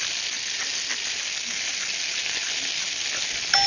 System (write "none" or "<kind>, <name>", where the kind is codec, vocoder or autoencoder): none